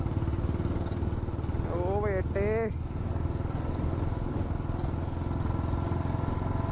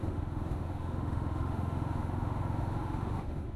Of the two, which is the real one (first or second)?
first